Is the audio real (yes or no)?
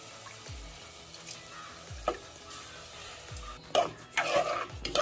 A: yes